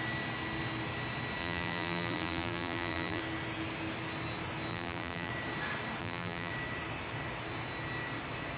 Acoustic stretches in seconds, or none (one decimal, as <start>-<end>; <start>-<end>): 0.0-1.4; 3.2-4.7; 5.3-6.0; 6.5-8.6